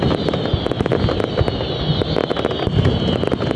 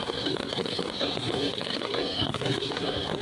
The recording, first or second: first